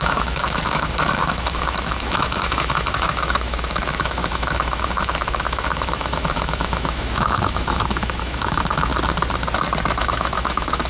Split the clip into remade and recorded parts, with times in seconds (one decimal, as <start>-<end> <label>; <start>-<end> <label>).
0.0-8.9 remade; 8.9-10.0 recorded; 10.0-10.9 remade